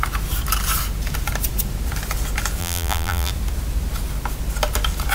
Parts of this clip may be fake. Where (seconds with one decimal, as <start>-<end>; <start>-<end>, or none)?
2.6-3.3